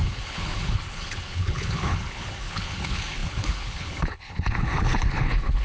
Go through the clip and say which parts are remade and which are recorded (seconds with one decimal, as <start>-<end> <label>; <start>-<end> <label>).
0.0-5.6 remade